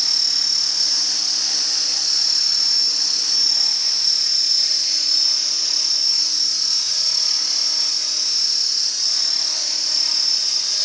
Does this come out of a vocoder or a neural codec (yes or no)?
no